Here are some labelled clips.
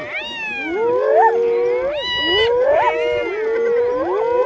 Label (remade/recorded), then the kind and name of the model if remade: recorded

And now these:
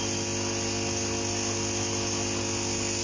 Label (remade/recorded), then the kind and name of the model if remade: recorded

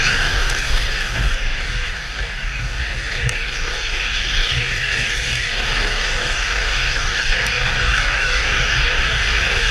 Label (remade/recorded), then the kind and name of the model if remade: remade, codec, DAC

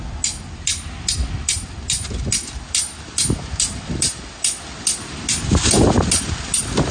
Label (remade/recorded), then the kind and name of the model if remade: recorded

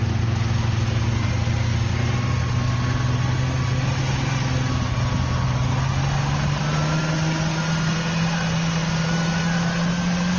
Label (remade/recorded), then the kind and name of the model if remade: recorded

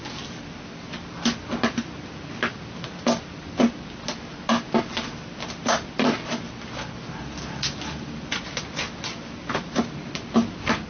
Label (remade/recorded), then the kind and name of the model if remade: recorded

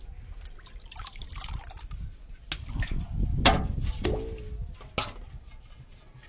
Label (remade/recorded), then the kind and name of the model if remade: recorded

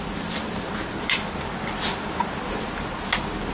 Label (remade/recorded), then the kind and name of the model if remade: recorded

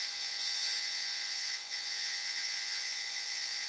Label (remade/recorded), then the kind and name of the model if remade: remade, vocoder, Vocos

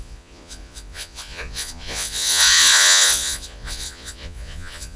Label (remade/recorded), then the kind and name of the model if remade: remade, vocoder, Vocos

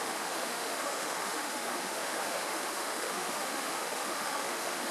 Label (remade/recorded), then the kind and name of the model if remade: remade, autoencoder, DAC-VAE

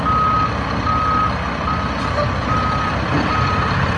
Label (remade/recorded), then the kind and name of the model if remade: recorded